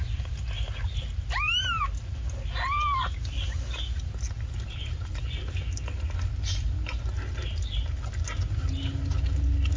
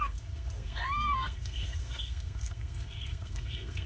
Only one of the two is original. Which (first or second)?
first